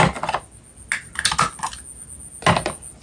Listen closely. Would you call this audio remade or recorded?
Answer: recorded